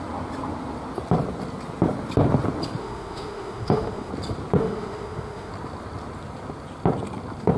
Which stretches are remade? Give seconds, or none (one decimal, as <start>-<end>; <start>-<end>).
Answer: 2.8-4.1; 4.6-5.5